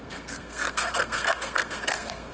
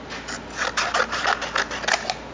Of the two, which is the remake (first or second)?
first